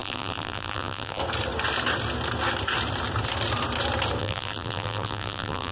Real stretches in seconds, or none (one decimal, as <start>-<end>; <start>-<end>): 1.2-4.2